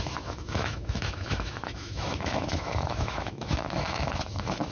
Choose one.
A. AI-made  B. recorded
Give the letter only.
A